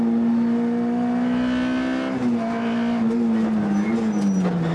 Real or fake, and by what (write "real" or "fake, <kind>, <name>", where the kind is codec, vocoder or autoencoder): real